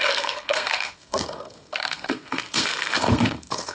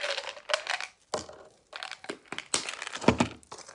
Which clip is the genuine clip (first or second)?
second